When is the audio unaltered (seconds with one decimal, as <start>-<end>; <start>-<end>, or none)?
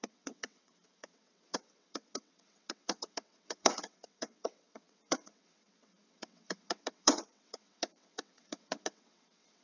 none